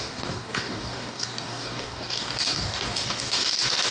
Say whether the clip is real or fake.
fake